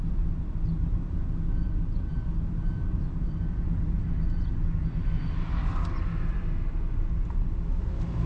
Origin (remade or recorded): recorded